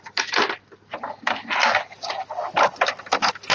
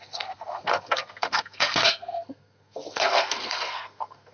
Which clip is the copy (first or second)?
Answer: second